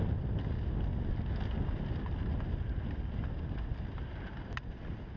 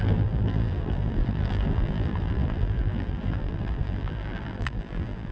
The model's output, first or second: second